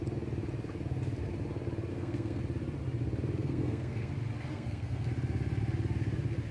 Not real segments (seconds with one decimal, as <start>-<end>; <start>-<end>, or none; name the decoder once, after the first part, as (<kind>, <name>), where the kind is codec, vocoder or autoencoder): 1.9-2.4 (codec, SNAC); 3.4-4.1; 4.5-5.1